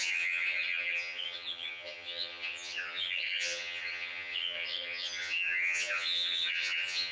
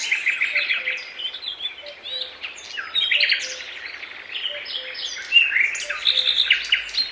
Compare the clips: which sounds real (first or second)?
second